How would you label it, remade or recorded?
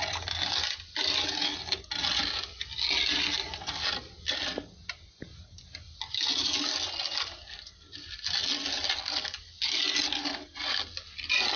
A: recorded